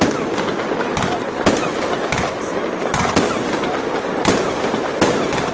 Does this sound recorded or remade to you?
recorded